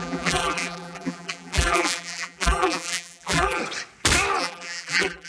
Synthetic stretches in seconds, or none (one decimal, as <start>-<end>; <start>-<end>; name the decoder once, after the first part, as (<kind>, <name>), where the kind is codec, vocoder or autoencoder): 0.0-3.6 (vocoder, BigVGAN v2); 4.4-5.3